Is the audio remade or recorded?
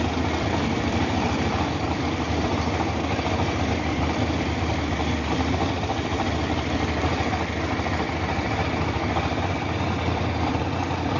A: remade